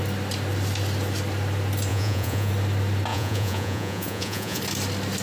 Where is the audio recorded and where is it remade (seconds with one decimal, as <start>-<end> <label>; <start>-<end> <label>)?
0.0-1.9 recorded; 1.9-2.5 remade; 2.5-3.1 recorded; 3.1-4.6 remade; 4.6-5.2 recorded